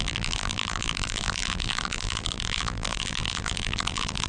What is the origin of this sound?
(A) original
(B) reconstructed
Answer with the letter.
B